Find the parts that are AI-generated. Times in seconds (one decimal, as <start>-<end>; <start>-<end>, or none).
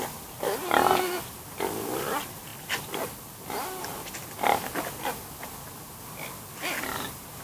none